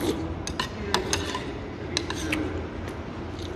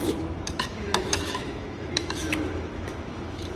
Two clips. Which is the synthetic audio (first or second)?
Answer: second